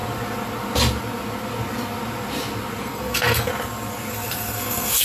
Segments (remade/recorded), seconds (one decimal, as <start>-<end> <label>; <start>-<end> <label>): 0.0-2.8 recorded; 2.8-3.5 remade; 3.5-4.1 recorded; 4.1-5.0 remade